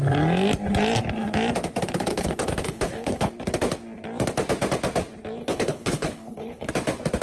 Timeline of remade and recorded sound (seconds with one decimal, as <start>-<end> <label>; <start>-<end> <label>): 0.0-2.1 recorded; 2.1-3.3 remade; 3.3-5.4 recorded; 5.4-6.7 remade; 6.7-7.2 recorded